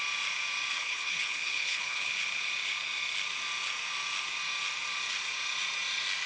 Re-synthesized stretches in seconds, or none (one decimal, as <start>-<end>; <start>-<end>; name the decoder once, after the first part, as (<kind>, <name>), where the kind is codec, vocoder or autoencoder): 0.7-2.1 (codec, HILCodec)